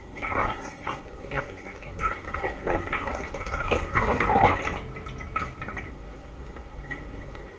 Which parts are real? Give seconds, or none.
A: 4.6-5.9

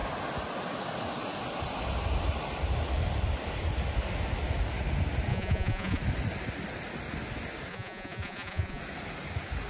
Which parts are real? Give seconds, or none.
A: 0.0-5.3; 6.0-7.7; 8.8-9.7

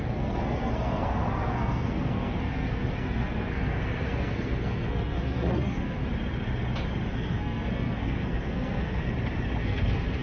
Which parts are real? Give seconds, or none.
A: 6.0-7.1; 9.0-9.6